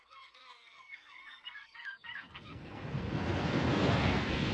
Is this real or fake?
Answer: fake